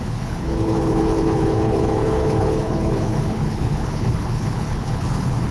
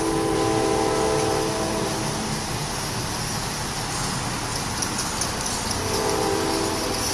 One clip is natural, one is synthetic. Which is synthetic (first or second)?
first